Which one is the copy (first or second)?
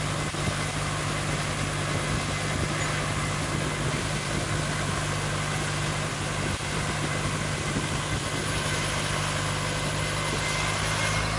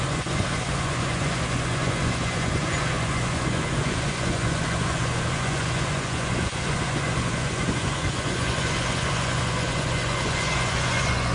second